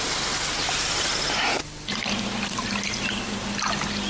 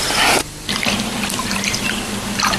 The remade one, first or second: second